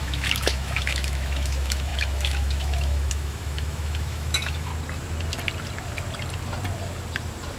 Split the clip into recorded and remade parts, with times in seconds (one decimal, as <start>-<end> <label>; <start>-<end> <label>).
0.0-4.7 remade; 4.7-7.6 recorded